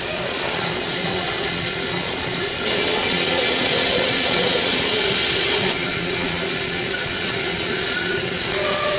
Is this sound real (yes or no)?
no